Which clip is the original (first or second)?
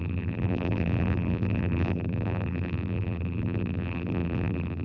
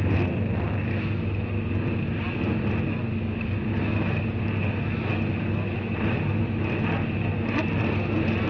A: second